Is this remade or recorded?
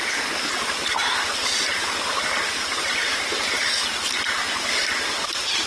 recorded